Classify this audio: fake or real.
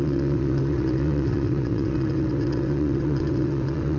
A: fake